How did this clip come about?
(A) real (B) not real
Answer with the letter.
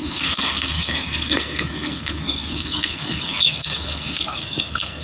B